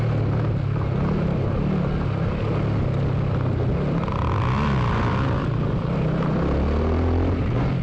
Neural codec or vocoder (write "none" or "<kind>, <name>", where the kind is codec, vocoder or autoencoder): none